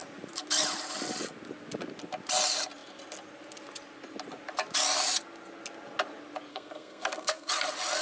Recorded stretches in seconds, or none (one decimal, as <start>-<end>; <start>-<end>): 0.0-6.5; 7.5-8.0